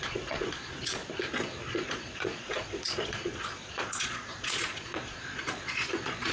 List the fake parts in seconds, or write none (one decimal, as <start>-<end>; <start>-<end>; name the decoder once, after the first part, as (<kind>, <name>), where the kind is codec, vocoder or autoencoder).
0.0-1.0 (vocoder, Vocos); 1.7-6.3